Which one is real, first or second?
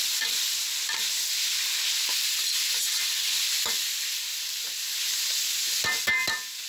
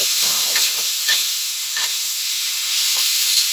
first